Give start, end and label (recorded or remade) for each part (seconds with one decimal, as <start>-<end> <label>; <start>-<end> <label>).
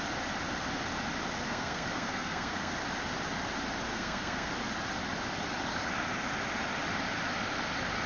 0.0-1.5 recorded; 1.5-2.7 remade; 2.7-3.9 recorded; 3.9-4.5 remade; 4.5-8.1 recorded